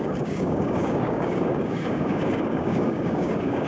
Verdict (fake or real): fake